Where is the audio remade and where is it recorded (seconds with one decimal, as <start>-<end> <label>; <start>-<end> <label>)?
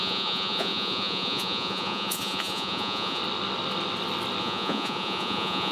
0.0-3.2 remade; 3.2-4.4 recorded; 4.4-5.7 remade